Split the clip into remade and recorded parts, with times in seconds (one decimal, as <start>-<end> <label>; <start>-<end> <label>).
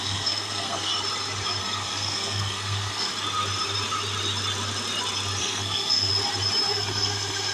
0.0-0.9 remade; 0.9-1.6 recorded; 1.6-3.1 remade; 3.1-5.4 recorded; 5.4-6.1 remade; 6.1-6.7 recorded; 6.7-7.5 remade